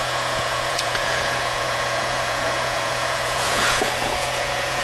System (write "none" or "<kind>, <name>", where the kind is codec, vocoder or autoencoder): vocoder, Vocos